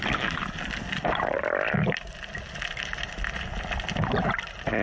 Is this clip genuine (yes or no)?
yes